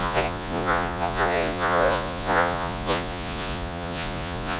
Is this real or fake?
fake